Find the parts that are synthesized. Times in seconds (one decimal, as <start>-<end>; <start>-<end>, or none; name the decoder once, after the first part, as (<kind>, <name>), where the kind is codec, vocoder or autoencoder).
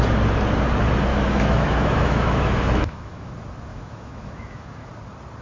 1.1-3.3 (autoencoder, DAC-VAE); 3.7-4.9